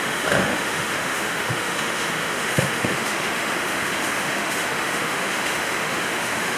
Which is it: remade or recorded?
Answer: remade